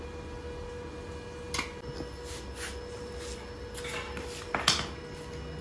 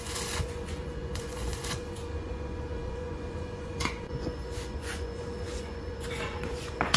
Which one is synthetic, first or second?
second